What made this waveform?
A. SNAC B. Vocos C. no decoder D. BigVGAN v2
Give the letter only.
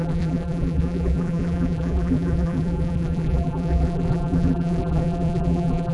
D